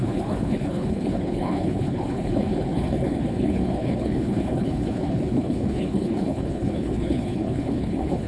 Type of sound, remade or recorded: remade